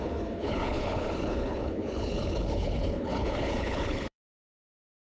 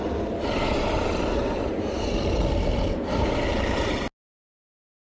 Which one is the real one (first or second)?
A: second